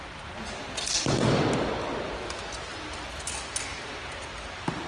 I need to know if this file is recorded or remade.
recorded